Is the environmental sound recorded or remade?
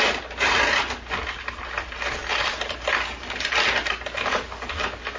recorded